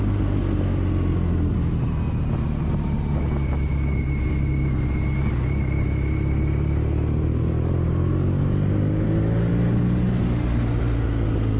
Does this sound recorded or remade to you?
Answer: recorded